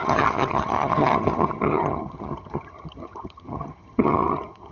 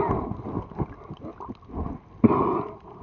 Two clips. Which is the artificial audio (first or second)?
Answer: first